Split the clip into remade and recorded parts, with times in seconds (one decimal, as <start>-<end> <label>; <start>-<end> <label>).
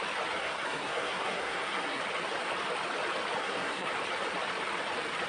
0.0-0.4 recorded; 0.4-2.0 remade; 2.0-3.4 recorded; 3.4-3.9 remade; 3.9-5.3 recorded